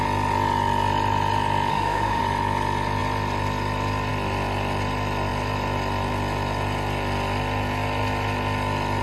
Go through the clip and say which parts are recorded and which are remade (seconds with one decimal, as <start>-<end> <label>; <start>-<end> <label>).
0.0-1.7 recorded; 1.7-2.2 remade; 2.2-9.0 recorded